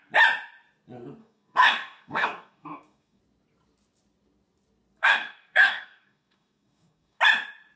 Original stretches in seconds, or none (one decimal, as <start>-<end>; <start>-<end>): 0.0-1.2; 3.2-5.0; 7.2-7.8